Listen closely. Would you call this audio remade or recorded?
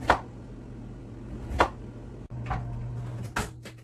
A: recorded